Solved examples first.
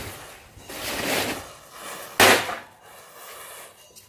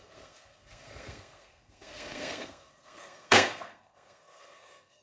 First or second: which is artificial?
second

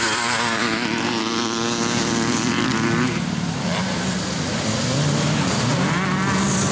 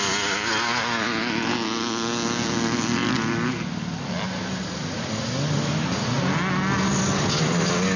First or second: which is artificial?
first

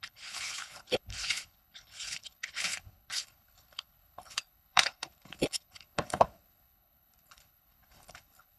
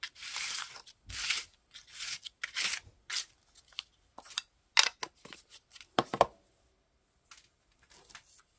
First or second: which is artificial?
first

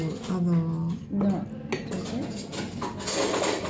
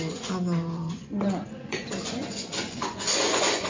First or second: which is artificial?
second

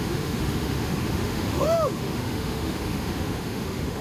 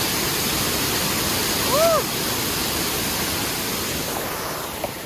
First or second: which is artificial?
first